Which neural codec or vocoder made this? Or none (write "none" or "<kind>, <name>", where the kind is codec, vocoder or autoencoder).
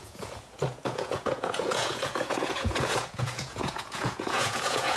vocoder, Vocos